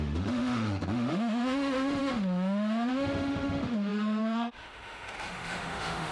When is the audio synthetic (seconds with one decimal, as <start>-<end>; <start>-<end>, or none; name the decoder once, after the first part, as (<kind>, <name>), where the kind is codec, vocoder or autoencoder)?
0.0-6.1 (autoencoder, DAC-VAE)